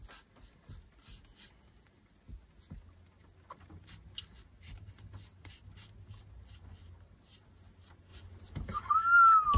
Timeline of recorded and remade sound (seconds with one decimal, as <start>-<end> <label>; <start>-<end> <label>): 0.0-9.6 recorded